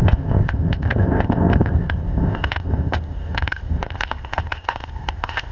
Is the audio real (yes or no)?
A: no